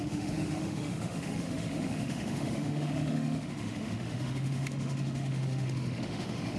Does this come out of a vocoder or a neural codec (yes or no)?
yes